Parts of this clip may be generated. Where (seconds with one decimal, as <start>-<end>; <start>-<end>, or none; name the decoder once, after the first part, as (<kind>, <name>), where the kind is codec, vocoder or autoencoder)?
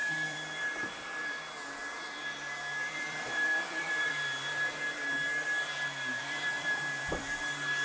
0.0-1.4 (vocoder, BigVGAN v2); 2.8-4.1; 6.1-7.3